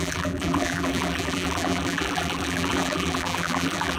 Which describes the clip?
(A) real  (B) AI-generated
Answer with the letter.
B